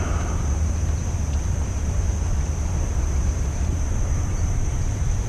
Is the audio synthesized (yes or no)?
yes